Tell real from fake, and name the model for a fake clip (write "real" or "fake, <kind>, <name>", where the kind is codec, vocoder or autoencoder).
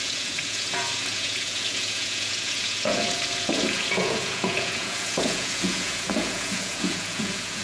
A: fake, vocoder, Vocos